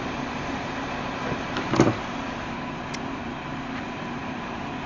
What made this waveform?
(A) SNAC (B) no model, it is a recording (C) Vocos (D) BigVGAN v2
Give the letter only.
D